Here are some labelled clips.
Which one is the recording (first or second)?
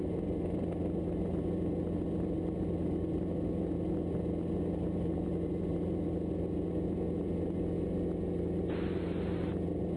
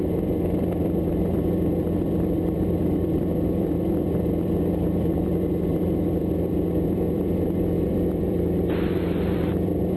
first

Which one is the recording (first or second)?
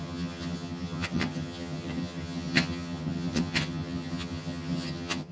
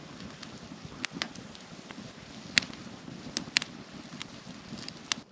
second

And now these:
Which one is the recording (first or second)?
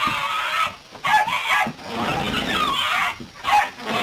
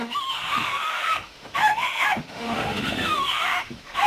first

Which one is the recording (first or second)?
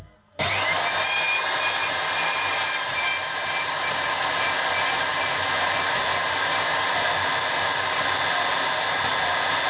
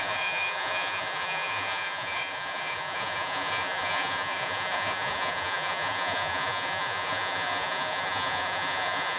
first